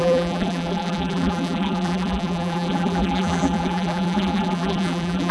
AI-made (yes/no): yes